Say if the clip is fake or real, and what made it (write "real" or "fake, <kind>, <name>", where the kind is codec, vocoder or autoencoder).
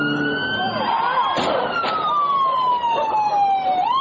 real